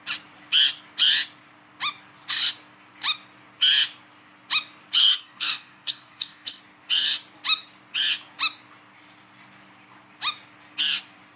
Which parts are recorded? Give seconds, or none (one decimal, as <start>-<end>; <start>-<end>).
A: 0.0-5.0; 6.6-11.4